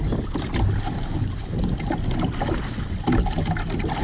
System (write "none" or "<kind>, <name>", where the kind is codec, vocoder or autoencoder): none